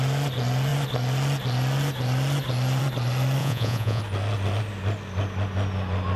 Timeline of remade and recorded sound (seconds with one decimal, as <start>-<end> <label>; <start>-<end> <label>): 0.0-3.4 recorded; 3.4-4.0 remade; 4.0-6.2 recorded